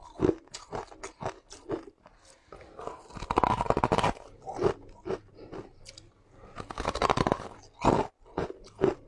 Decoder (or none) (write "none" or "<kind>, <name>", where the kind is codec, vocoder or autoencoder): none